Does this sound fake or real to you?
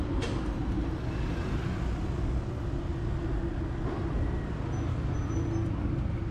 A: real